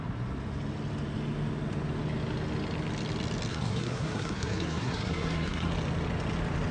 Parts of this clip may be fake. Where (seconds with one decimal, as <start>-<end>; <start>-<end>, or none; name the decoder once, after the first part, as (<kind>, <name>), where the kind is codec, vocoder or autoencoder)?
3.5-5.7 (codec, SNAC)

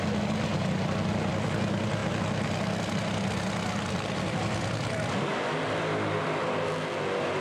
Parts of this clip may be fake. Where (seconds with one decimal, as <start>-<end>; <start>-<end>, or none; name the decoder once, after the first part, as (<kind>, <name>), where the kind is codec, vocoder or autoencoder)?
none

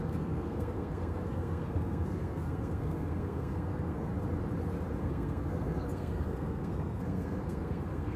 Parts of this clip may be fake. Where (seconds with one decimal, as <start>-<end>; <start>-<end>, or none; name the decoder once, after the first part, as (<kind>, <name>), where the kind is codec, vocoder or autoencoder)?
0.0-4.1 (codec, SNAC); 5.0-8.2

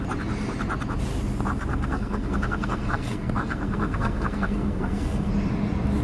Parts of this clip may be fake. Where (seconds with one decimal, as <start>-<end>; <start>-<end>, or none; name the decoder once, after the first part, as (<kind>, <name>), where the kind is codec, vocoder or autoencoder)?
1.7-5.3 (codec, SNAC)

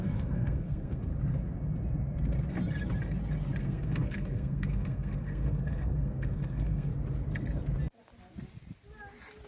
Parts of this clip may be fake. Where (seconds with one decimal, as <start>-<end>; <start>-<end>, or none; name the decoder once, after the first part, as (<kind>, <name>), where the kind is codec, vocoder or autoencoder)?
0.0-1.1 (codec, SNAC); 3.6-6.9